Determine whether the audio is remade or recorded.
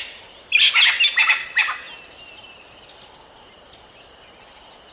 recorded